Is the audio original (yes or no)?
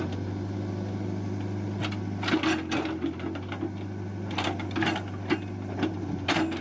yes